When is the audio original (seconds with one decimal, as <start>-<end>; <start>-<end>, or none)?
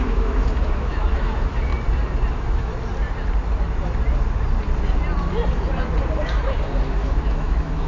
1.7-2.3; 2.7-6.8